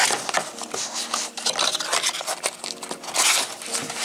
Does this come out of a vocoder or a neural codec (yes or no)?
no